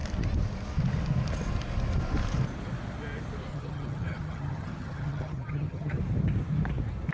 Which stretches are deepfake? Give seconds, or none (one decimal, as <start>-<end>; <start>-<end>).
3.5-6.0